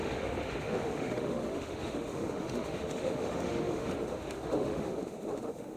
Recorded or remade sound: remade